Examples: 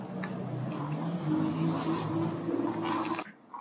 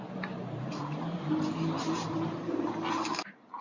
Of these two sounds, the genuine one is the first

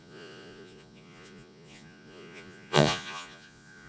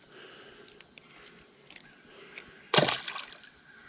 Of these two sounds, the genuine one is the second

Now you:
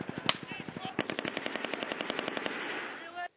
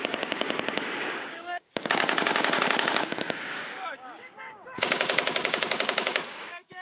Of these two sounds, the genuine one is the first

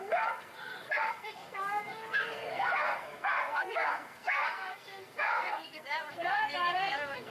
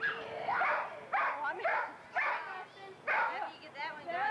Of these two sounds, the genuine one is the second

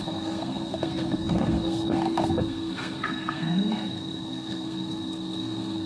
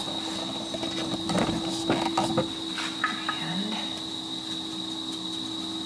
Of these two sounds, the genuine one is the second